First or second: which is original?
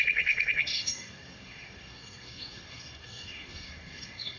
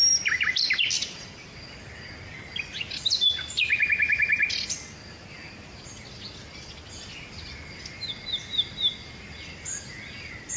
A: second